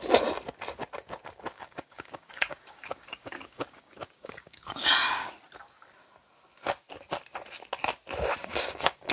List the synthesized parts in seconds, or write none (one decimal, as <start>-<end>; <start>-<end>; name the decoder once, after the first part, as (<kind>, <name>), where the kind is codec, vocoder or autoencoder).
1.5-5.3 (codec, DAC); 8.4-9.1